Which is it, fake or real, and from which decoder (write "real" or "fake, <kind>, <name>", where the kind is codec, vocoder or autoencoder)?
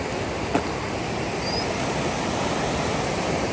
real